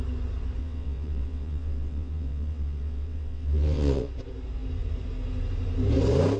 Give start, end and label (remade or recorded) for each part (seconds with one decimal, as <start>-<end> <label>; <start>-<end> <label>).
0.0-0.6 recorded; 0.6-4.1 remade; 4.1-6.4 recorded